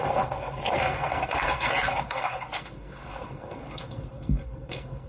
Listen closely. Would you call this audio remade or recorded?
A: remade